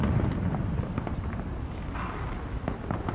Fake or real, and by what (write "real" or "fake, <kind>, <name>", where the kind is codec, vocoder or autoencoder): real